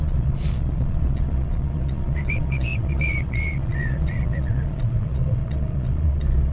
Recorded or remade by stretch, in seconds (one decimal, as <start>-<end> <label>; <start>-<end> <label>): 0.0-6.5 remade